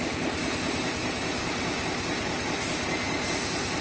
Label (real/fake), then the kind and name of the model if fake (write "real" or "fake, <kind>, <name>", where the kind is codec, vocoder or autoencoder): real